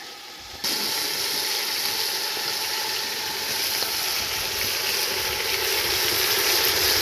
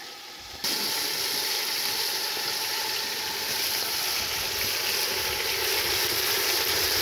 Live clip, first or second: first